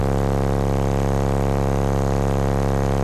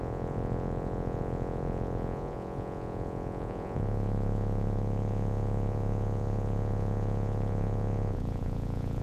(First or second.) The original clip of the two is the first